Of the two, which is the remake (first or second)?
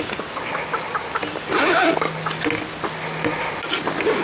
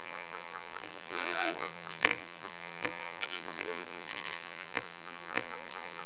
second